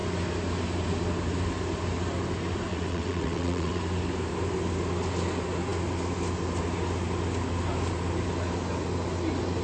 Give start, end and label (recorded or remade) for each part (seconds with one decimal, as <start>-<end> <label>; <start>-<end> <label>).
0.0-2.7 recorded; 2.7-3.8 remade; 3.8-9.6 recorded

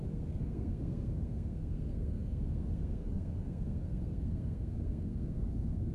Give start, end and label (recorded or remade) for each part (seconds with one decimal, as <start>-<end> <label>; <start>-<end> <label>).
0.0-5.9 remade

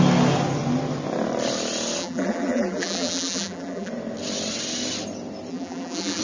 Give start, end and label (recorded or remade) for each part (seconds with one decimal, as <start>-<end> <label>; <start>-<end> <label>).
0.0-2.0 recorded; 2.0-3.9 remade; 3.9-5.5 recorded; 5.5-6.2 remade

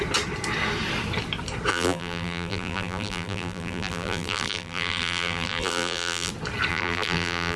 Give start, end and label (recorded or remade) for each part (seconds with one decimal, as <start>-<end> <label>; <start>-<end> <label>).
0.0-1.7 recorded; 1.7-6.3 remade; 6.3-6.7 recorded; 6.7-7.6 remade

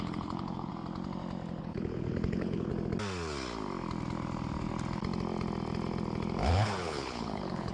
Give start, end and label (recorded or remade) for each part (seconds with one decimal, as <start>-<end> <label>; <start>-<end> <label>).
0.0-0.7 remade; 0.7-1.6 recorded; 1.6-2.7 remade; 2.7-6.5 recorded; 6.5-7.7 remade

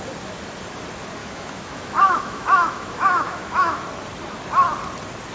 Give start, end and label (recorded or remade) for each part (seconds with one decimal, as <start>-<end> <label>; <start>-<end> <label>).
0.0-1.2 recorded; 1.2-3.8 remade; 3.8-5.3 recorded